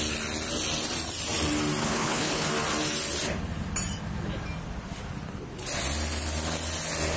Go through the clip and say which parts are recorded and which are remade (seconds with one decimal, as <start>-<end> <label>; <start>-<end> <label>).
0.0-1.8 recorded; 1.8-2.5 remade; 2.5-7.2 recorded